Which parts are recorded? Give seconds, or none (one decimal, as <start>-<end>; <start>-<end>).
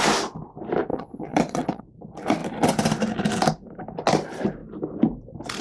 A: 0.0-0.9; 1.8-5.6